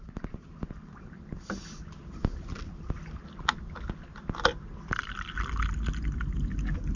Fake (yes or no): no